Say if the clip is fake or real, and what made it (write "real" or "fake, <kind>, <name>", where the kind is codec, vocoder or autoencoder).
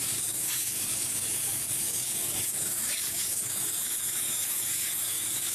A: fake, codec, DAC